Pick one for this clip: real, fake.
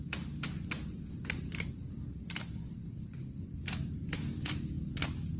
real